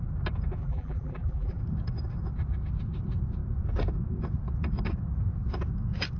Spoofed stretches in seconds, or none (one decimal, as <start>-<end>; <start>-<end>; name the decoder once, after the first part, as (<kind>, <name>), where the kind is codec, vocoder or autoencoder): 0.6-1.6 (vocoder, BigVGAN v2)